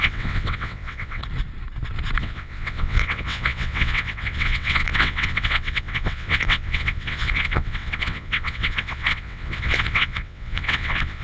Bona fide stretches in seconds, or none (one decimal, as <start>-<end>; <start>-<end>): 1.2-2.2